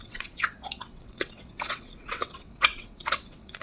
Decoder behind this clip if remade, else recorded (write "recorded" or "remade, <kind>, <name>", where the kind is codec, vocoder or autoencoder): remade, vocoder, WaveNeXt